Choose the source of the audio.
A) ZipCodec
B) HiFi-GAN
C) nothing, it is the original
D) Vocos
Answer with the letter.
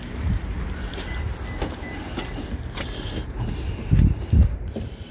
C